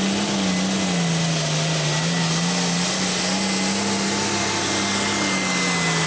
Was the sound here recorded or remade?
recorded